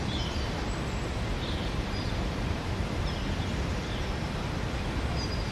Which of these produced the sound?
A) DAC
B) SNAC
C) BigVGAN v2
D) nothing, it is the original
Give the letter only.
C